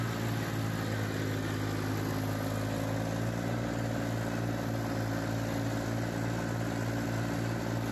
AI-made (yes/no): no